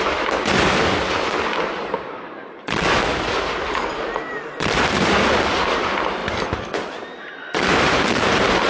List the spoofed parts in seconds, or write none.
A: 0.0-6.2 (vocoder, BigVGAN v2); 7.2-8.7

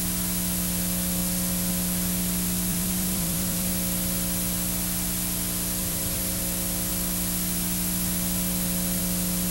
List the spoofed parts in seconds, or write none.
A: 2.7-3.7 (vocoder, BigVGAN v2); 5.8-6.4